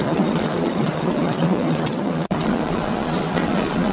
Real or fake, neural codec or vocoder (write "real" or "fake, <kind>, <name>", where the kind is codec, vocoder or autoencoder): fake, vocoder, Vocos